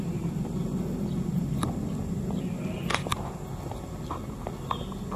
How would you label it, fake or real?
real